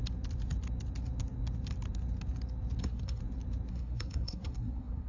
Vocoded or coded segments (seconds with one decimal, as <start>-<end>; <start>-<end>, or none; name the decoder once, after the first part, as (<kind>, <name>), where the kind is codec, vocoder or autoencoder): 2.8-3.2 (codec, SNAC); 3.7-5.1